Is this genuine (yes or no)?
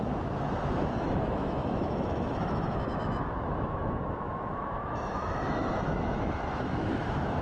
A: no